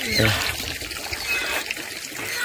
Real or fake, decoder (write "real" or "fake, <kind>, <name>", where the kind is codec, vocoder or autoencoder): real